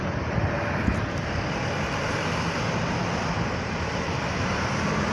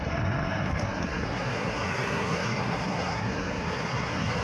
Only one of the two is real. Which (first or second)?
first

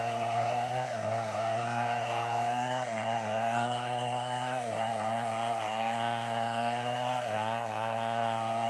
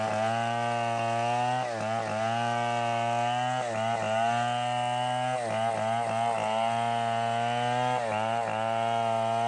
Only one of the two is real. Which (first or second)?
second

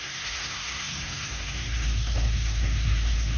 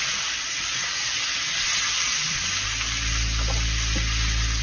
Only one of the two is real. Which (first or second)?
second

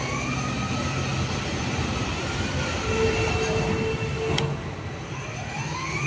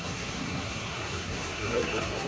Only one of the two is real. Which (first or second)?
first